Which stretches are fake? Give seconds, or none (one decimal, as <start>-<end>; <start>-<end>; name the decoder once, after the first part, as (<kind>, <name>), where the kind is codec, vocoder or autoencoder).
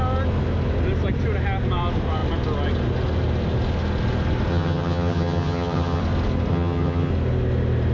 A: 4.5-6.0 (vocoder, HiFi-GAN); 6.5-7.1